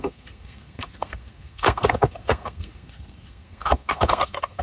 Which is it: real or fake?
fake